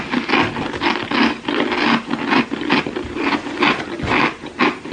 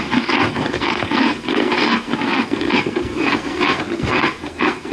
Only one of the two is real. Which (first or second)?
first